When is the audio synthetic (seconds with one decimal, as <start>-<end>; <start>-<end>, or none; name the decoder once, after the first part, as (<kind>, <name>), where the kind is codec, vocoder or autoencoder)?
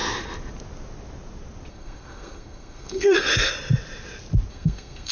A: 1.7-3.5 (codec, SNAC); 4.5-5.1